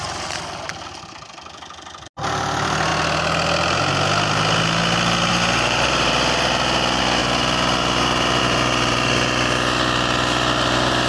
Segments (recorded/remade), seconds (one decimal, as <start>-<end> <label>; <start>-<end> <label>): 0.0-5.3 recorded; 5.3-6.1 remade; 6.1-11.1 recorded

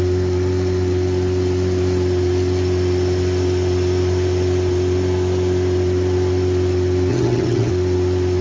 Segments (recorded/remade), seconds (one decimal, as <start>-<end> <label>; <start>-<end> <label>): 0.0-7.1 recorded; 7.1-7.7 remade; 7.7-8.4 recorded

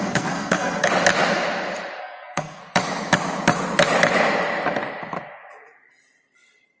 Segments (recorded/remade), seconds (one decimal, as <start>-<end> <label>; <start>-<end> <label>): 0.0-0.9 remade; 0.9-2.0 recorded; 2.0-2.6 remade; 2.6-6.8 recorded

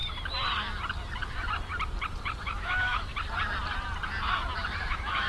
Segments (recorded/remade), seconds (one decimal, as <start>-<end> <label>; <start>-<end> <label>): 0.0-2.4 recorded; 2.4-3.1 remade; 3.1-4.8 recorded; 4.8-5.3 remade